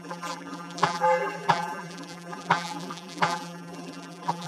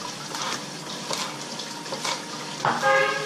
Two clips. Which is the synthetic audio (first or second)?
first